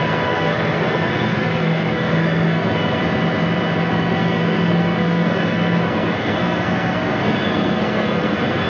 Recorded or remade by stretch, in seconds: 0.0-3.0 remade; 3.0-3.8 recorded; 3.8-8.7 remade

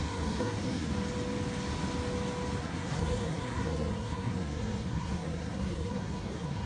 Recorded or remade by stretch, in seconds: 0.0-0.9 remade; 0.9-2.6 recorded; 2.6-6.7 remade

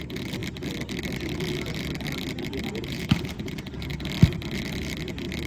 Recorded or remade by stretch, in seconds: 0.0-5.5 recorded